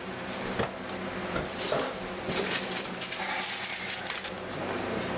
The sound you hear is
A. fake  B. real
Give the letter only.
B